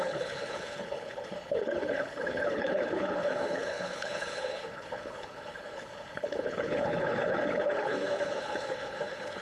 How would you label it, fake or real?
fake